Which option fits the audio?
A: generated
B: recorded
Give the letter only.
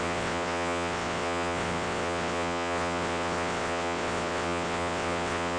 A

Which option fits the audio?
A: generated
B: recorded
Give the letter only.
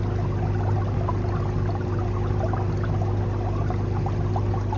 B